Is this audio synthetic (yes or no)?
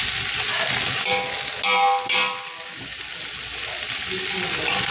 no